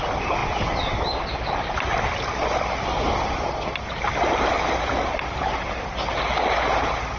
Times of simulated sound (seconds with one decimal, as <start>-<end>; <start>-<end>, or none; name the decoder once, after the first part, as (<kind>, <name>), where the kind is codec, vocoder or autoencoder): none